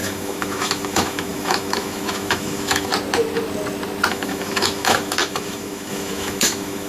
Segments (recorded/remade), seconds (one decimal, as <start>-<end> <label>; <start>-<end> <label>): 0.0-2.9 remade; 2.9-4.1 recorded; 4.1-6.9 remade